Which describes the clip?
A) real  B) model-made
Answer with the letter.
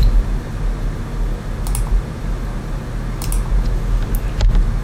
A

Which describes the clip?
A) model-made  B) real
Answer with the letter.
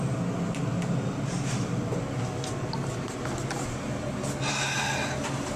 B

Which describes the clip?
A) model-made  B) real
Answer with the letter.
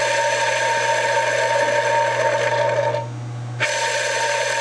B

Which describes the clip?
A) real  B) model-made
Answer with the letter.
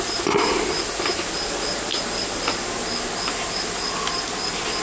A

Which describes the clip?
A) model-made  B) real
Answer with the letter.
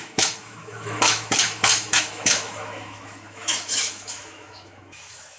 A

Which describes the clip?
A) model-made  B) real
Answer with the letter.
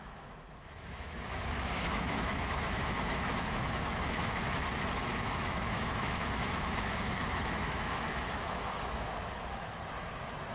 A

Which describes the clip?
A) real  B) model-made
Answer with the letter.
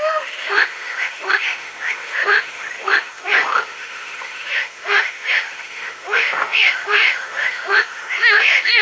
B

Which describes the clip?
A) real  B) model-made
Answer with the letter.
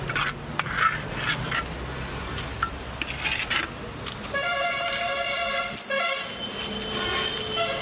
A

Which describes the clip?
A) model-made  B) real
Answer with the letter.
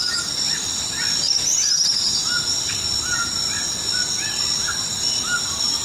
B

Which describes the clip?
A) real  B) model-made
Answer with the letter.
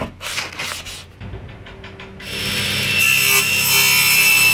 A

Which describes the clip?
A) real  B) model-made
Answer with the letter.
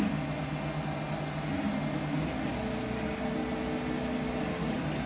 A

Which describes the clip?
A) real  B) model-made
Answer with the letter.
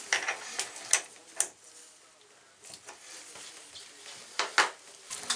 A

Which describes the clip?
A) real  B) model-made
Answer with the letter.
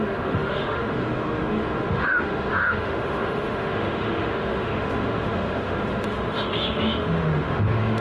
B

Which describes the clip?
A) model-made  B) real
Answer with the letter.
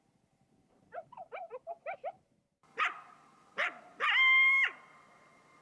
B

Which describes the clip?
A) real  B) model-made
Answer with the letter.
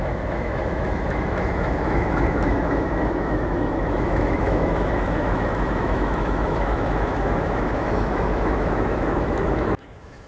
B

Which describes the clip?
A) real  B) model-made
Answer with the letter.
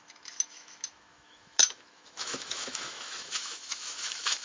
B